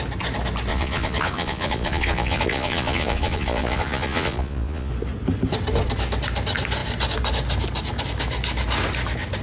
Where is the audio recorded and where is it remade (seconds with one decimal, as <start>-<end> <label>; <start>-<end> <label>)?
0.0-0.7 recorded; 0.7-4.9 remade; 4.9-9.4 recorded